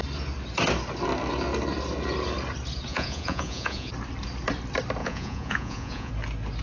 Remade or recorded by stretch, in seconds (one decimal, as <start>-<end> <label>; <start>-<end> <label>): 0.0-2.9 recorded; 2.9-3.9 remade; 3.9-5.0 recorded; 5.0-6.1 remade; 6.1-6.6 recorded